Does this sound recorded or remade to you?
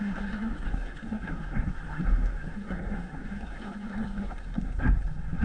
remade